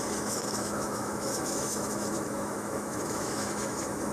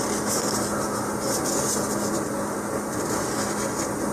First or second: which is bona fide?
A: second